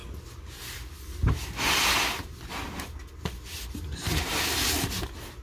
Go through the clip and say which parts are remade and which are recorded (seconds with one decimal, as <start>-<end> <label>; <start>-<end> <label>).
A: 0.0-5.4 recorded